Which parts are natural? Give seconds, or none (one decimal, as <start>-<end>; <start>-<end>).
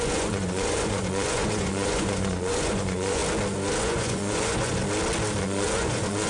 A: 3.2-3.8; 4.8-5.4